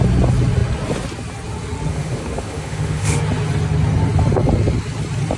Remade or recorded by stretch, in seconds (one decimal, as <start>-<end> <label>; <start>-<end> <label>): 0.0-1.9 recorded; 1.9-3.2 remade; 3.2-5.4 recorded